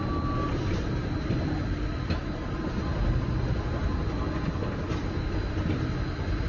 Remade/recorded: recorded